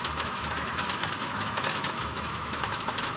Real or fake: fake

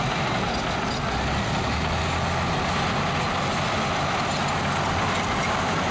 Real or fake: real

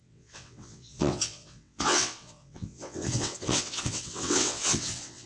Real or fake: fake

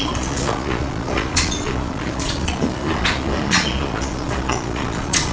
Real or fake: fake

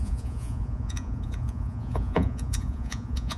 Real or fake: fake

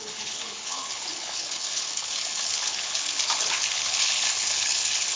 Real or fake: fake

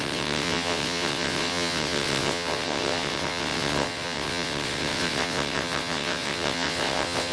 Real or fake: fake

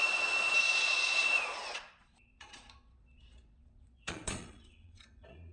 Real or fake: fake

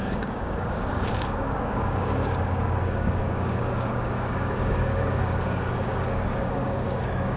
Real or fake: fake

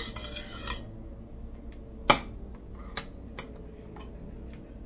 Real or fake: real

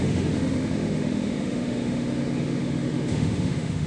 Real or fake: fake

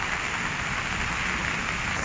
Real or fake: real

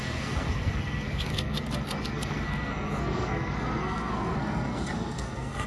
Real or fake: fake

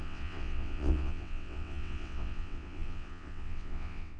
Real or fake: fake